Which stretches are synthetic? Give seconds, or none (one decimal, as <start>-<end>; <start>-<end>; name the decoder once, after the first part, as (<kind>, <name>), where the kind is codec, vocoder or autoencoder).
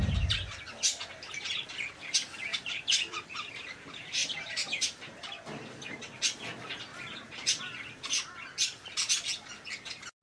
2.5-3.5 (vocoder, BigVGAN v2); 4.2-6.2; 6.9-7.6